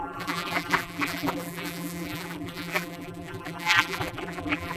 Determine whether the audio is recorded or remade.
remade